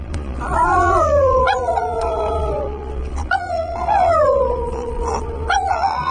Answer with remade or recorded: remade